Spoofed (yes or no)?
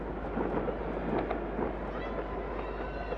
no